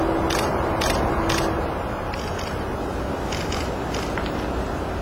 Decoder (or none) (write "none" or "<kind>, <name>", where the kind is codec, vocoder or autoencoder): vocoder, BigVGAN v2